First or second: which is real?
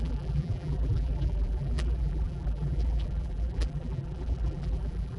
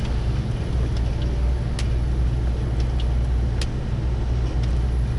second